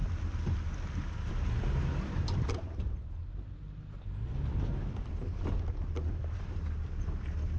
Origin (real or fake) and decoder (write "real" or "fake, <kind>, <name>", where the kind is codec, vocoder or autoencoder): real